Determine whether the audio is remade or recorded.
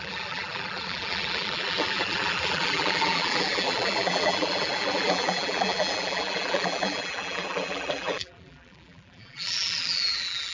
remade